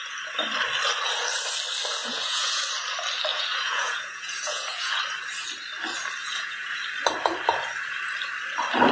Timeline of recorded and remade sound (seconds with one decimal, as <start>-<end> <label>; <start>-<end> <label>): 0.0-2.0 recorded; 2.0-2.6 remade; 2.6-3.3 recorded; 3.3-5.0 remade; 5.0-6.2 recorded; 6.2-6.8 remade; 6.8-8.9 recorded